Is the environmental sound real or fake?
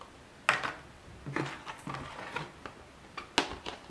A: real